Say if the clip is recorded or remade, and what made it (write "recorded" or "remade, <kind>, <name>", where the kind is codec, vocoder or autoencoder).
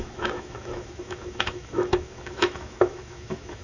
remade, autoencoder, DAC-VAE